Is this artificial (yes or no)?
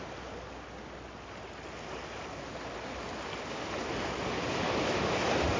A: no